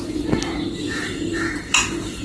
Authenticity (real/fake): real